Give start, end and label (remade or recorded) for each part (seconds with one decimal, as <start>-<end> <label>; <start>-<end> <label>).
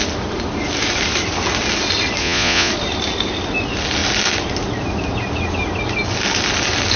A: 0.0-2.2 recorded; 2.2-2.7 remade; 2.7-7.0 recorded